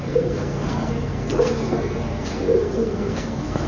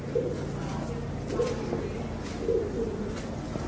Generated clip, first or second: first